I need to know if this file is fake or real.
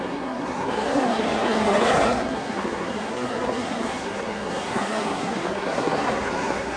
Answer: fake